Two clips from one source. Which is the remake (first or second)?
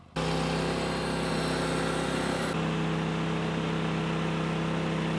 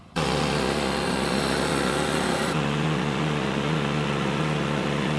second